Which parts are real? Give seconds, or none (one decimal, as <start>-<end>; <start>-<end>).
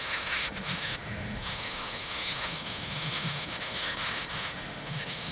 none